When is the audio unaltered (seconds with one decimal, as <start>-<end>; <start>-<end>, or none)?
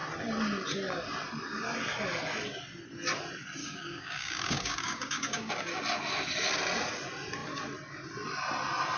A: 0.0-3.6; 5.5-9.0